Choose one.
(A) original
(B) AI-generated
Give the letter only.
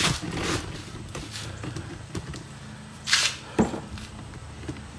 B